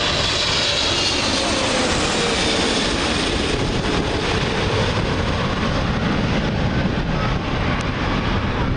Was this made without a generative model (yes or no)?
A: yes